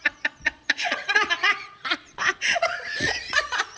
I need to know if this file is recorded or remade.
remade